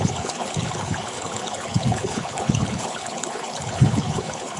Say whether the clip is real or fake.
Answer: fake